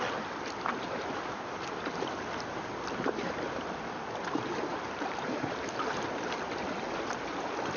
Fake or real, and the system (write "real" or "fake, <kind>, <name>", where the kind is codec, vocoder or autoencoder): fake, vocoder, BigVGAN v2